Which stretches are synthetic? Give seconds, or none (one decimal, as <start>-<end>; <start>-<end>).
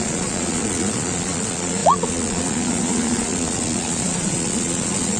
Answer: 0.0-5.2